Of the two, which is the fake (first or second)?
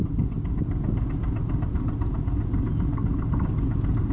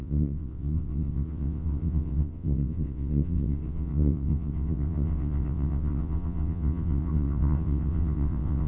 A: second